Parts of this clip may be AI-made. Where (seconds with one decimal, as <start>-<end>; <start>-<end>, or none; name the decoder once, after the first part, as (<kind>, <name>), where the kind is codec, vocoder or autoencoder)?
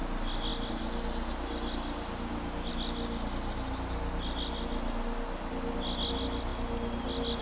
none